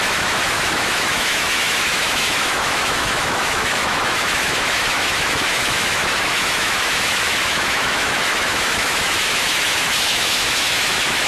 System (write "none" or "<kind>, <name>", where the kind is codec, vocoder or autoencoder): autoencoder, DAC-VAE